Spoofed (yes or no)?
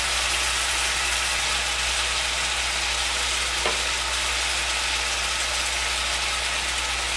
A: no